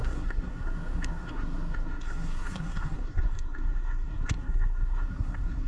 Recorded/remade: remade